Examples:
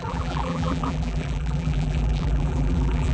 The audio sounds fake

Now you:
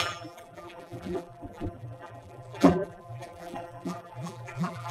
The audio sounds fake